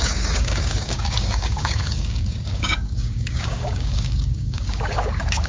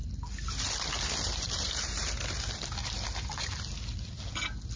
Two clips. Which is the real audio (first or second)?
second